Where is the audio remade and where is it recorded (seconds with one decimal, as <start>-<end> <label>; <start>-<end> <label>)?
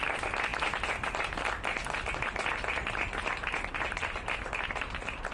0.0-5.3 recorded